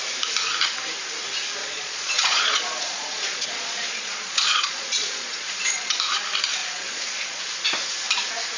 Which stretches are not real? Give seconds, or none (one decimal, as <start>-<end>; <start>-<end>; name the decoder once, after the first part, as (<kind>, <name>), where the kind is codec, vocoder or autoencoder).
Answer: 1.6-6.0 (vocoder, Vocos); 6.6-7.4